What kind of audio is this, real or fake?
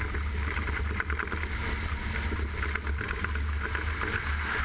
real